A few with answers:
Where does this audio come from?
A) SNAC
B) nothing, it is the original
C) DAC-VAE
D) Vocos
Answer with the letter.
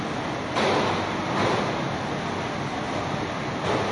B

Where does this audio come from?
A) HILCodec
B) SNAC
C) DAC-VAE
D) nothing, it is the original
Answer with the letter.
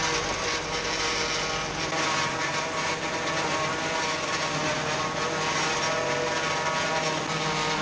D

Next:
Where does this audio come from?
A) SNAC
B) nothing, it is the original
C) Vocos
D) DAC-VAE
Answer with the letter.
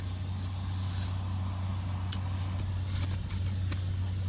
B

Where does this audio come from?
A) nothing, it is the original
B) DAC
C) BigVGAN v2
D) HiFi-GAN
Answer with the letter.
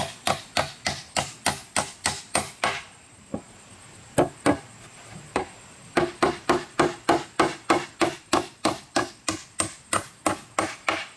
A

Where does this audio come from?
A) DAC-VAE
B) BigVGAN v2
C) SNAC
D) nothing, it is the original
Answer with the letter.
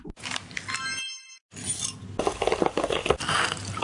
D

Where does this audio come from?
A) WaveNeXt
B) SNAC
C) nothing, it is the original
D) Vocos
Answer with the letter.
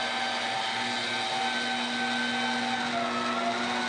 C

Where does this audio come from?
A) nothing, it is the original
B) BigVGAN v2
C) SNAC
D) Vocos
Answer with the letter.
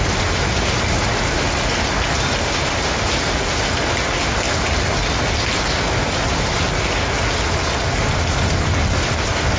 A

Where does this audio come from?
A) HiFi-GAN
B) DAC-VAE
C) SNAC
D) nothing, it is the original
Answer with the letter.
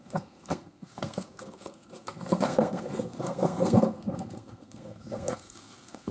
C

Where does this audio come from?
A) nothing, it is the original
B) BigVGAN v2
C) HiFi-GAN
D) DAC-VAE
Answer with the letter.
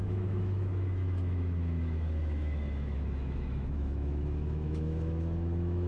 D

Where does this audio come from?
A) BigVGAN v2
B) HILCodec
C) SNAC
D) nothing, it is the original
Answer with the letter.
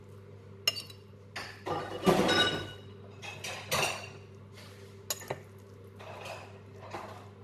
D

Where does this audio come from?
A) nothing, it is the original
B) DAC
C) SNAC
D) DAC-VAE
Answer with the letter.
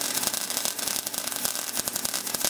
A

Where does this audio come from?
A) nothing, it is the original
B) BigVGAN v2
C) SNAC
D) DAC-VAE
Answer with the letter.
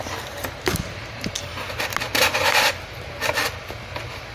A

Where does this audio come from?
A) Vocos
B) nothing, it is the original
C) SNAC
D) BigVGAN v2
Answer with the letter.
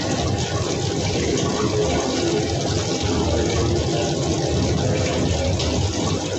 B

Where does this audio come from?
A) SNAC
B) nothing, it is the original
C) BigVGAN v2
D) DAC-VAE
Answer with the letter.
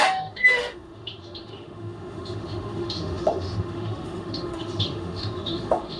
D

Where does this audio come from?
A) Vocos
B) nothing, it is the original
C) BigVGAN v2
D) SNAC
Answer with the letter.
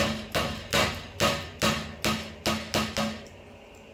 B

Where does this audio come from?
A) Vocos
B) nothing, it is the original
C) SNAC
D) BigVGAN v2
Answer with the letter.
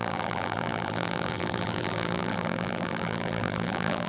D